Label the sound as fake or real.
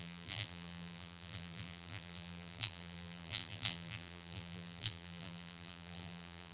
fake